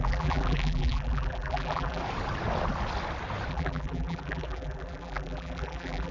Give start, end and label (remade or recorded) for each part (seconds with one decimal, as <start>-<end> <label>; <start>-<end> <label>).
0.0-2.0 remade; 2.0-3.5 recorded; 3.5-6.1 remade